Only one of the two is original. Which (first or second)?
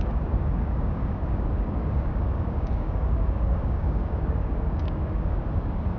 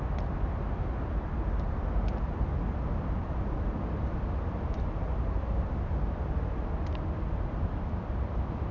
second